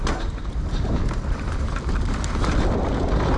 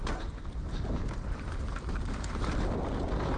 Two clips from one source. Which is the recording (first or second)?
second